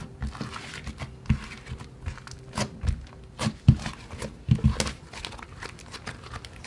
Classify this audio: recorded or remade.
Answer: recorded